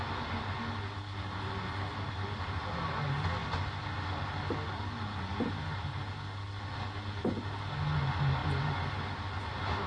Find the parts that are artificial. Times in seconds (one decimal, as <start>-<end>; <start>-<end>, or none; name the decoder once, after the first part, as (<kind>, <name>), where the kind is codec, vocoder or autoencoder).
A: none